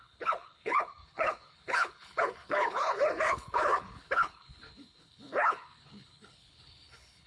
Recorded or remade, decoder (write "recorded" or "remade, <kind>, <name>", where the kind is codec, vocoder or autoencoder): remade, codec, HILCodec